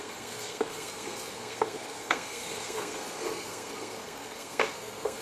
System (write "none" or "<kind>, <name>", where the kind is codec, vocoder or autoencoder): codec, SNAC